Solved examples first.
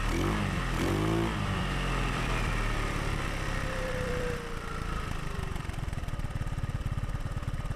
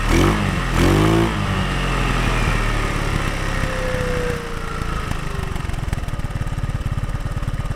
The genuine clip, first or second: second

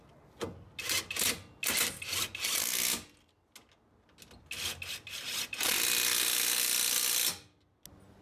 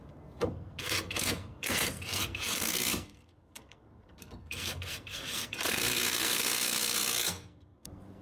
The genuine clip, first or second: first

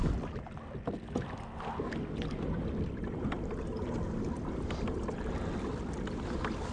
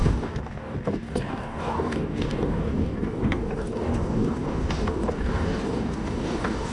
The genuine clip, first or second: first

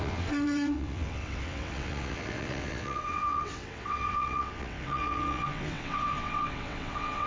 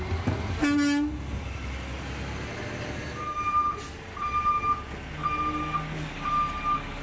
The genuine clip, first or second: second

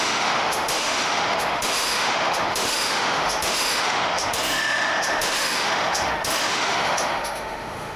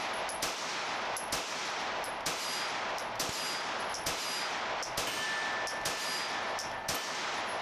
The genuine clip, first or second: second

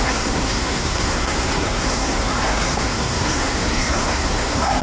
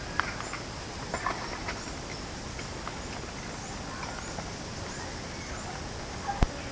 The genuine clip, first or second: second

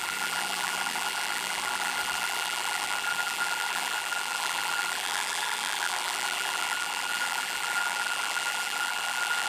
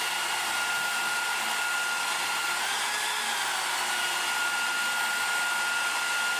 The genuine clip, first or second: second